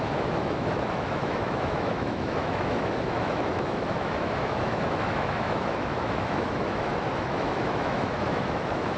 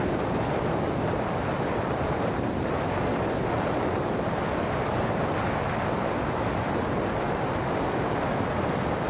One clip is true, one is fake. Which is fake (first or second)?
first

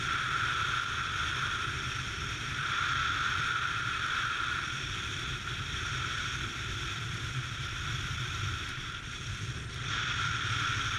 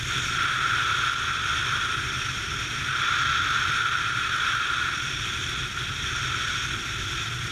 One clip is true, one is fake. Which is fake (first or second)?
first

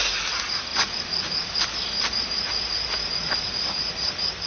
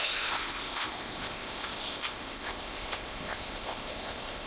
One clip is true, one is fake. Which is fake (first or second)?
second